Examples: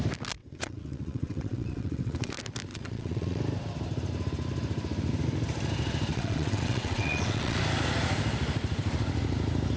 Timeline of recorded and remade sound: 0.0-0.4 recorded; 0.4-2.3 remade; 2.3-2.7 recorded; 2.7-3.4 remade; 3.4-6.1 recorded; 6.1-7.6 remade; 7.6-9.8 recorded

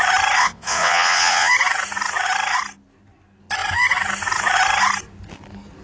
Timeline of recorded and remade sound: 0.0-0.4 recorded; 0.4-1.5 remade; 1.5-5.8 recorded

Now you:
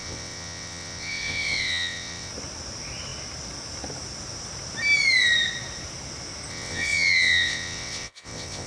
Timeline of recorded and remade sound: 0.0-2.3 remade; 2.3-6.5 recorded; 6.5-8.7 remade

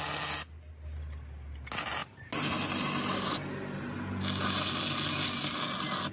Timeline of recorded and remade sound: 0.0-6.1 recorded

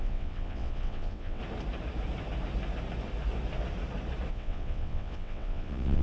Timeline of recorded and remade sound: 0.0-1.4 remade; 1.4-4.3 recorded; 4.3-6.0 remade